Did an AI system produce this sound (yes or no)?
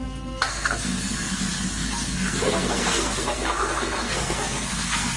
yes